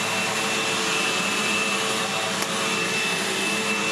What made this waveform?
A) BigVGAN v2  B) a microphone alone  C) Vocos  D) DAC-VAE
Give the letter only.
B